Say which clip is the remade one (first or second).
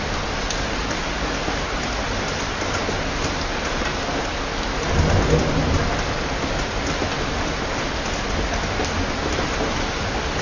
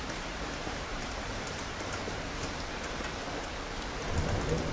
second